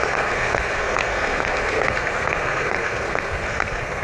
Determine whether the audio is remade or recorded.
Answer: remade